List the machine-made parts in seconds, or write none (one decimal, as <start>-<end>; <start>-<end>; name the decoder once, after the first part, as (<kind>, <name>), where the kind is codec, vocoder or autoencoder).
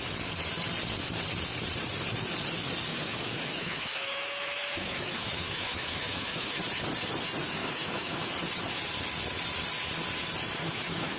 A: 2.9-6.6 (autoencoder, DAC-VAE); 7.6-8.3; 10.6-11.2